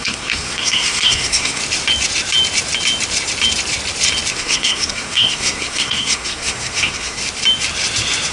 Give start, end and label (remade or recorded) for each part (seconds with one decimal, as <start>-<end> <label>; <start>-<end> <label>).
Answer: 0.0-1.6 remade; 1.6-4.3 recorded; 4.3-7.2 remade; 7.2-8.3 recorded